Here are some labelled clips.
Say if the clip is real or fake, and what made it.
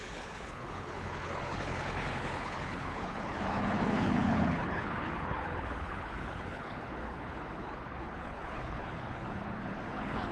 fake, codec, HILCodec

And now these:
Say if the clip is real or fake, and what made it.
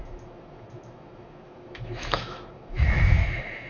fake, autoencoder, DAC-VAE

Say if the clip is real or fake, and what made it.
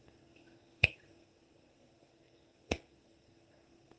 fake, codec, SNAC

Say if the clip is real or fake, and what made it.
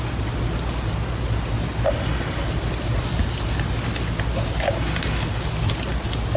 real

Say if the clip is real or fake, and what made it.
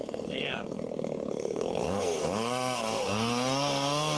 fake, codec, SNAC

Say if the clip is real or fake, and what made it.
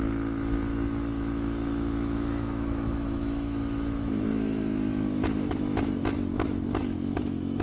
fake, autoencoder, DAC-VAE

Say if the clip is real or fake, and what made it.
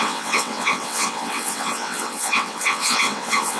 fake, vocoder, WaveNeXt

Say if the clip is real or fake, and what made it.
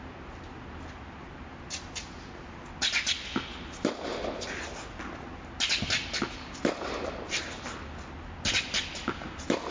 real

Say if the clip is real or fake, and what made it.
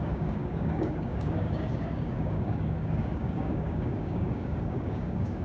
fake, codec, DAC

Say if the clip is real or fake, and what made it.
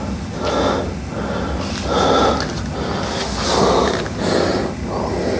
real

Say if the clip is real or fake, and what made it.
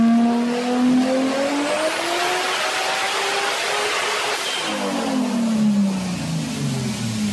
real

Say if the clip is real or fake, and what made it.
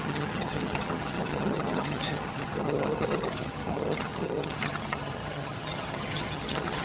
fake, vocoder, HiFi-GAN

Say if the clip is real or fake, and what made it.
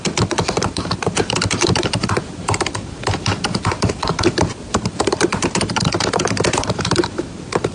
fake, vocoder, BigVGAN v2